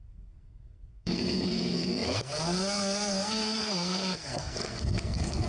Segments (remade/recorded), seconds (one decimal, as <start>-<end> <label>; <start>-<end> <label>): 0.0-5.5 remade